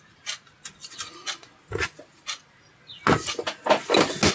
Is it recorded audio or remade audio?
recorded